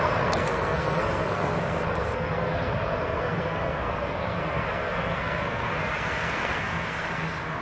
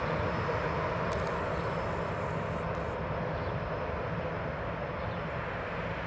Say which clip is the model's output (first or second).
first